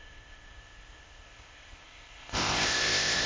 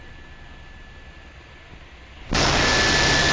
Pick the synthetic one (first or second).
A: first